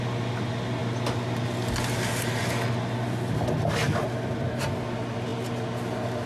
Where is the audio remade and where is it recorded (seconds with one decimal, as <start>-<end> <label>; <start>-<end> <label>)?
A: 0.0-6.3 recorded